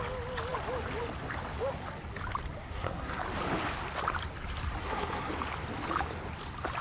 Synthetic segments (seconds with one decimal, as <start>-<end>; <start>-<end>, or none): 2.6-3.2; 4.8-5.3